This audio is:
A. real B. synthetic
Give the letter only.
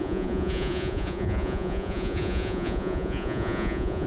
B